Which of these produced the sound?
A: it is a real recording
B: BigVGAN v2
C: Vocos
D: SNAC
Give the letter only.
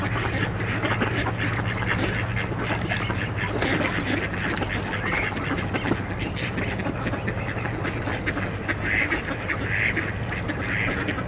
A